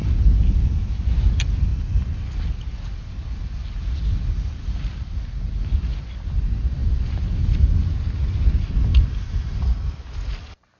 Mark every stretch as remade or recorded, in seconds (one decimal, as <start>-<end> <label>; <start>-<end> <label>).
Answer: 0.0-10.8 recorded